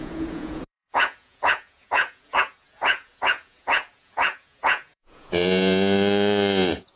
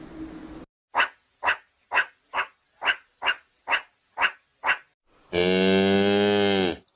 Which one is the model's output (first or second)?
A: first